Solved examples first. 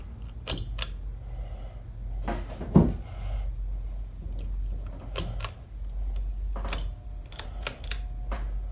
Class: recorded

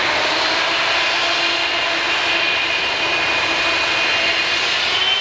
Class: recorded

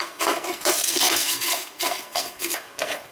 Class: remade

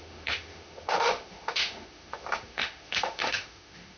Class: remade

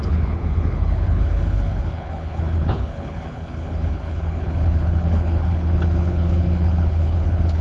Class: remade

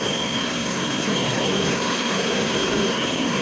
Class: remade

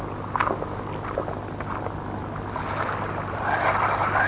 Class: recorded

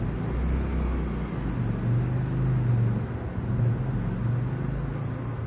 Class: recorded